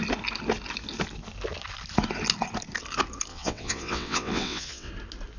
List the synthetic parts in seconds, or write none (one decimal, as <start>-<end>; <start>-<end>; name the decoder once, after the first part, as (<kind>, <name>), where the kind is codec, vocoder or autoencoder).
3.3-4.9 (vocoder, WaveNeXt)